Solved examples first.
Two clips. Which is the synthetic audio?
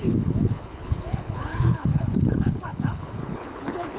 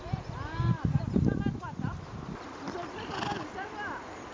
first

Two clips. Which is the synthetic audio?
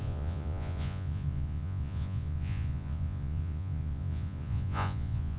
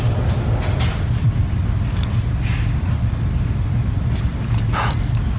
first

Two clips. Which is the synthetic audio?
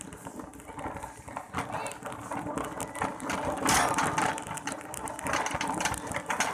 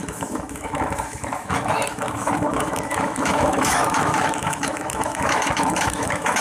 second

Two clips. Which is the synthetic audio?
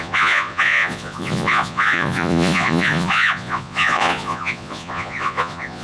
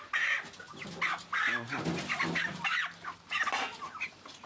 first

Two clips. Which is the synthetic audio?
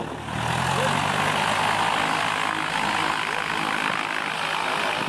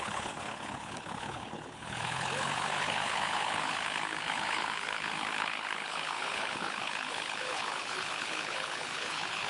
second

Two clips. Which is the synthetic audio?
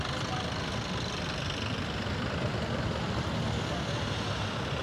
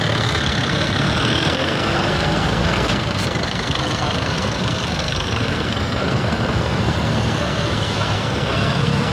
second